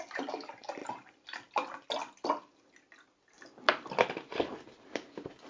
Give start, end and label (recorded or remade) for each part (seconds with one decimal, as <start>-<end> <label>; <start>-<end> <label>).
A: 0.0-5.5 recorded